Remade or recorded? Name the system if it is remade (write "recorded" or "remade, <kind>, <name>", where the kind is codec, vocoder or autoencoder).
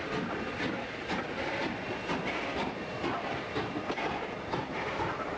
remade, vocoder, BigVGAN v2